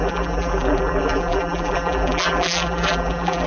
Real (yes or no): no